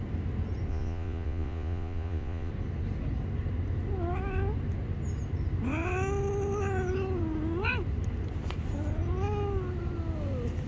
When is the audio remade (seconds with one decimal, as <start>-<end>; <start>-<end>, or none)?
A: 0.7-2.5